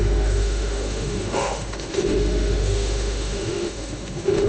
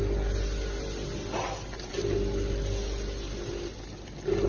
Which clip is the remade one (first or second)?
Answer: first